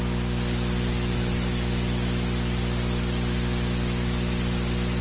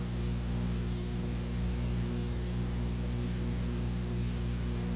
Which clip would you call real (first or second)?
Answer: first